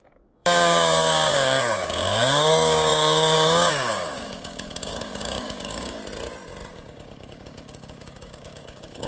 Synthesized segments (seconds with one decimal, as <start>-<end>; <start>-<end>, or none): 0.0-6.0; 6.7-9.1